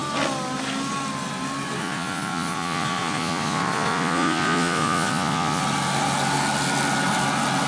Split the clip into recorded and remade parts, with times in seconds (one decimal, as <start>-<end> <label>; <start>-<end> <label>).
0.0-1.8 recorded; 1.8-5.6 remade; 5.6-7.7 recorded